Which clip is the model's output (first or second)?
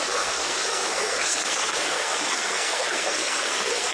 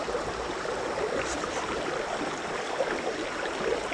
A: first